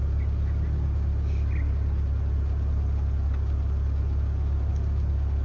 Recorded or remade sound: recorded